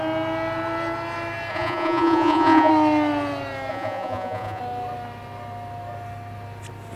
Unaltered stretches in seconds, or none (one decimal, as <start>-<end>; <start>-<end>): 0.0-1.5; 2.7-3.7; 4.6-7.0